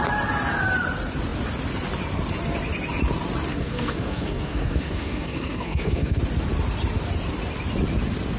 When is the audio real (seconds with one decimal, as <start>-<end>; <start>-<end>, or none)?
0.0-3.5; 6.2-8.4

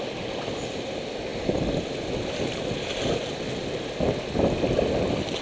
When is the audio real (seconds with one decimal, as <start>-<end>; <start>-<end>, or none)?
0.0-5.4

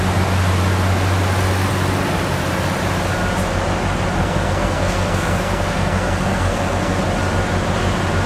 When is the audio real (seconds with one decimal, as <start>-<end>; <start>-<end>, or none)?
0.0-4.2; 7.0-8.3

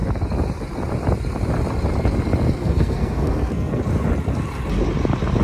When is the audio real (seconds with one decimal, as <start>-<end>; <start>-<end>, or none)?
0.0-2.6; 3.8-5.4

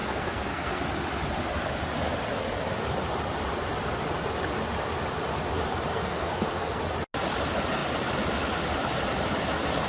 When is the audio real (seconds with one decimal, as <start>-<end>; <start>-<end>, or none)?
0.8-5.9; 6.8-9.9

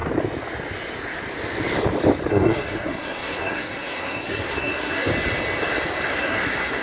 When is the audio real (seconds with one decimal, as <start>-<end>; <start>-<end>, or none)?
0.0-2.3; 5.1-6.1

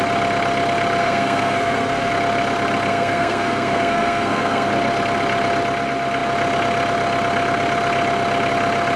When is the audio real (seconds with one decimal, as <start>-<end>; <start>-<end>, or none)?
0.0-1.0; 2.1-2.9; 4.7-9.0

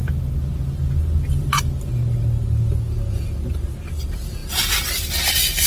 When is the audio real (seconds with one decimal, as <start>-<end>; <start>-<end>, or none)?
0.0-5.7